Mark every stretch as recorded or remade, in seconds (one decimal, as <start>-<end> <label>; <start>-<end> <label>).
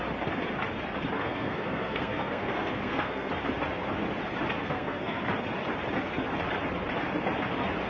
0.0-1.2 recorded; 1.2-3.3 remade; 3.3-4.6 recorded; 4.6-5.2 remade; 5.2-7.9 recorded